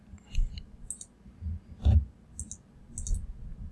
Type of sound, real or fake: real